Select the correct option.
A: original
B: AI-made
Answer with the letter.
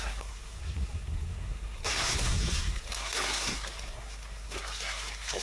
B